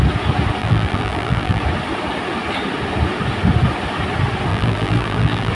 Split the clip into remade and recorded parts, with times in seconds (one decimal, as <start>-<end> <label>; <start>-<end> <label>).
0.0-0.6 recorded; 0.6-1.6 remade; 1.6-4.5 recorded; 4.5-5.5 remade